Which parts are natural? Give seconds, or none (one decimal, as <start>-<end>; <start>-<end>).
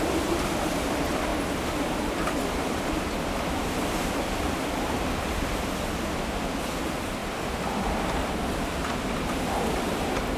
1.3-1.8; 7.2-8.2